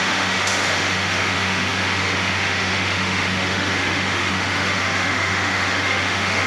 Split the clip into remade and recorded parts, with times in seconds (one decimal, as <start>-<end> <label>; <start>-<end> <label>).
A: 0.0-6.5 remade